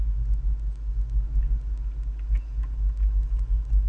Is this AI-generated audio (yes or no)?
no